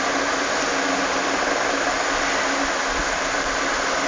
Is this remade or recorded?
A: recorded